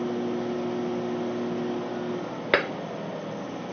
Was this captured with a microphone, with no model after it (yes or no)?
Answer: yes